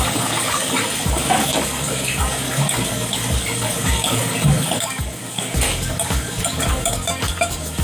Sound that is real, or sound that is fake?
fake